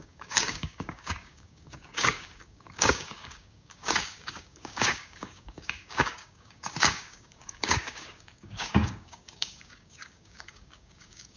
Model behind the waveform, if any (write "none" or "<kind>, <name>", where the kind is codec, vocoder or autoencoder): codec, DAC